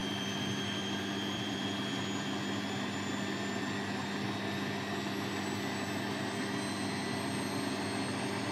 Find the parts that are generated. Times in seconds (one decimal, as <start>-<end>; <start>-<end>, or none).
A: 0.0-2.0